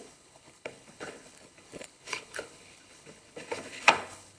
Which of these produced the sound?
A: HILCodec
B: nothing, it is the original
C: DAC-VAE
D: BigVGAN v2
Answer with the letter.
A